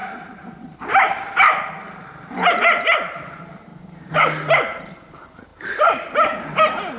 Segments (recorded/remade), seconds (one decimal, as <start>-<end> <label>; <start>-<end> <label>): 0.0-7.0 recorded